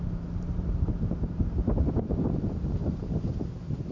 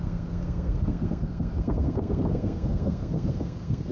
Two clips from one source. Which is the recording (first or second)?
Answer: first